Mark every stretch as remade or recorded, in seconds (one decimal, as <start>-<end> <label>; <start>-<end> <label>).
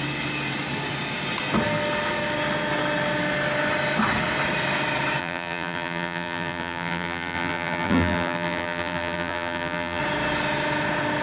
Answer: 0.0-5.2 recorded; 5.2-10.0 remade; 10.0-11.2 recorded